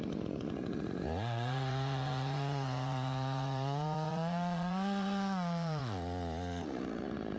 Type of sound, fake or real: fake